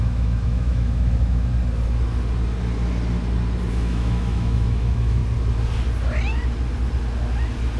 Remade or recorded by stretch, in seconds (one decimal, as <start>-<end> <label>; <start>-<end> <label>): 0.0-1.5 remade; 1.5-3.7 recorded; 3.7-5.2 remade; 5.2-7.8 recorded